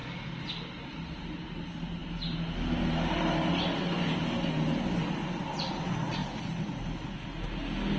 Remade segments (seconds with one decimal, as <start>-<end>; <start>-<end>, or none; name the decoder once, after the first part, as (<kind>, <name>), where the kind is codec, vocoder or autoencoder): none